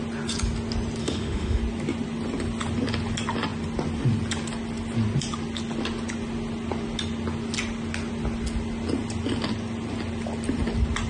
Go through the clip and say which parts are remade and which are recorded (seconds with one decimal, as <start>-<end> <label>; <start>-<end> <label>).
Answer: 0.0-1.0 recorded; 1.0-1.6 remade; 1.6-11.1 recorded